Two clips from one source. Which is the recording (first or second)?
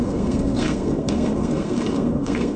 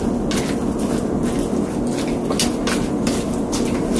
second